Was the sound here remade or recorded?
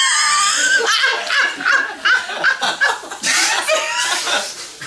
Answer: recorded